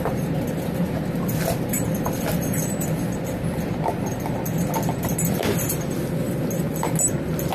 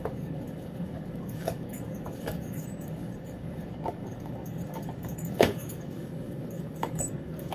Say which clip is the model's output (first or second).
second